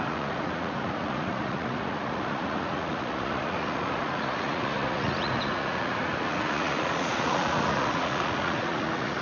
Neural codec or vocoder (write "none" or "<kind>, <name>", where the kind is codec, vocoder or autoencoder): vocoder, Vocos